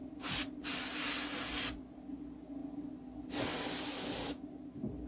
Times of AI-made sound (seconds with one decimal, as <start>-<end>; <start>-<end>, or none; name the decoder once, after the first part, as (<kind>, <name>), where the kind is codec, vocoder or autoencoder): none